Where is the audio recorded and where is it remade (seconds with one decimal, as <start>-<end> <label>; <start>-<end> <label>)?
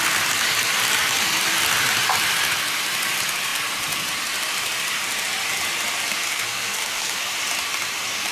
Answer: 0.0-6.3 recorded; 6.3-7.2 remade; 7.2-8.3 recorded